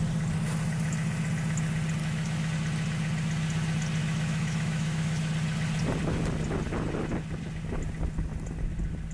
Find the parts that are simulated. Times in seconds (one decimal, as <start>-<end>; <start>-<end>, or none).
2.0-2.5; 4.0-5.3